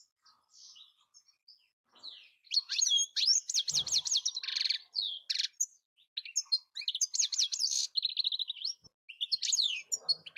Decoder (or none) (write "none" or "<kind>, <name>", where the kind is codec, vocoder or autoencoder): none